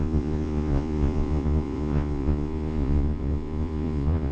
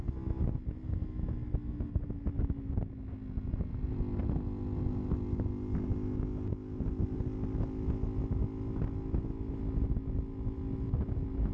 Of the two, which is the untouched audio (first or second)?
second